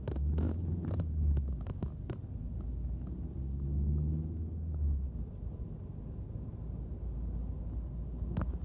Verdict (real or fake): real